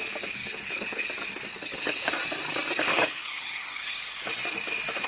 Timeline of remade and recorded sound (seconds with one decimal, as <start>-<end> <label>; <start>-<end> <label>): 0.0-0.4 recorded; 0.4-1.1 remade; 1.1-1.5 recorded; 1.5-2.1 remade; 2.1-2.9 recorded; 2.9-4.2 remade; 4.2-5.1 recorded